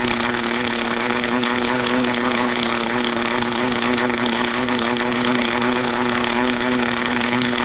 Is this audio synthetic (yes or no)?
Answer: yes